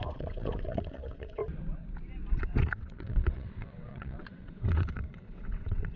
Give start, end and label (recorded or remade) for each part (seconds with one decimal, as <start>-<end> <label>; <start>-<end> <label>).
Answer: 0.0-1.4 remade; 1.4-2.3 recorded; 2.3-6.0 remade